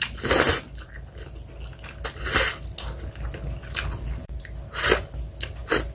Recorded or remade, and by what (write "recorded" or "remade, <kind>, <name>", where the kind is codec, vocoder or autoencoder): recorded